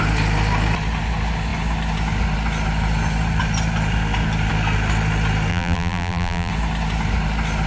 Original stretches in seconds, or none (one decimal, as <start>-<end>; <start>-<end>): 0.0-5.5; 6.5-7.7